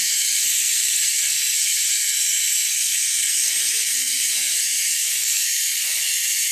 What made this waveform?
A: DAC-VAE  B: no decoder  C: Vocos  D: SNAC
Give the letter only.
D